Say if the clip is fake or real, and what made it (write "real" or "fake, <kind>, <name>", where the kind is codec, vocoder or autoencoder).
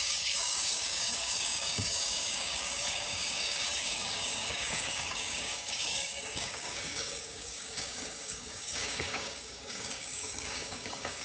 fake, codec, DAC